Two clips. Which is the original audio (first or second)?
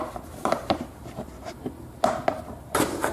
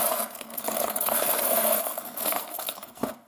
first